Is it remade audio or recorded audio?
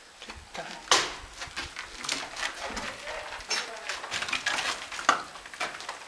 recorded